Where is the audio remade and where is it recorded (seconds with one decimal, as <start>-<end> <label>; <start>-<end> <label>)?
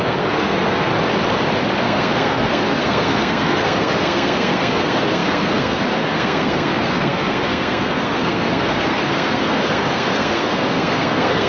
0.0-0.9 remade; 0.9-1.8 recorded; 1.8-11.5 remade